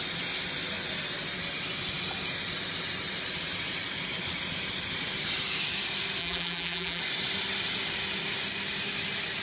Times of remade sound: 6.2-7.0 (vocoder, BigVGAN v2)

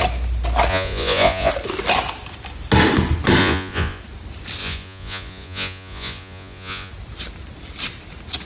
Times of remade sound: 0.7-1.5 (vocoder, Vocos); 3.4-4.0; 4.6-6.9

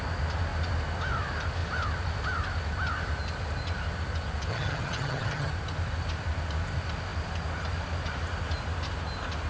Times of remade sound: 4.5-5.5 (vocoder, HiFi-GAN)

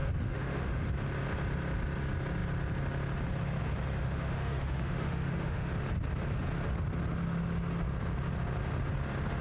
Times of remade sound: 0.0-0.9 (autoencoder, DAC-VAE); 4.0-5.7